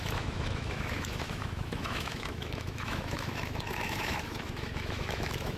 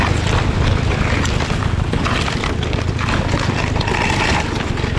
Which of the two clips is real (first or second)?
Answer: second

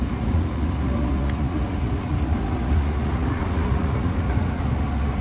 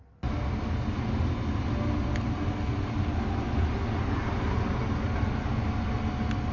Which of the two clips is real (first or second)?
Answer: second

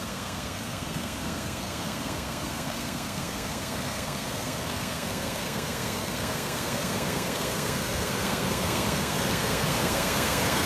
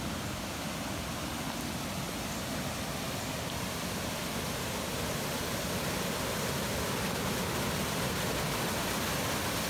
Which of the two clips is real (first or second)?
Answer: second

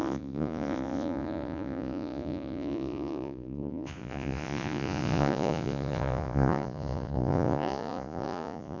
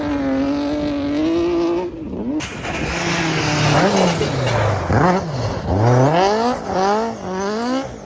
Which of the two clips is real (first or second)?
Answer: second